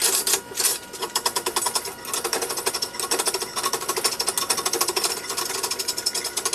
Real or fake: real